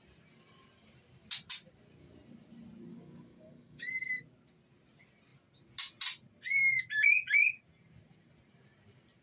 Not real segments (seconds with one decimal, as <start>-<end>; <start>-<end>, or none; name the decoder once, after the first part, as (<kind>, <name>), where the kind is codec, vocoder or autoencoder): 2.9-4.2 (codec, DAC)